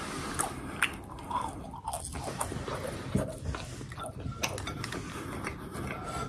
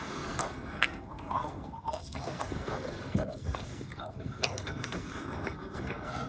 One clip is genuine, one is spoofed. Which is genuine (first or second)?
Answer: first